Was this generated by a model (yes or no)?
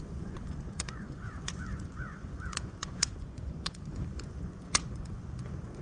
yes